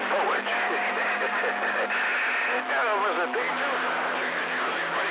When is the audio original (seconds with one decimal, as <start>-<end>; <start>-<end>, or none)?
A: 0.0-5.1